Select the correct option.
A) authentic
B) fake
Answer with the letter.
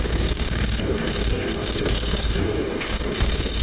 B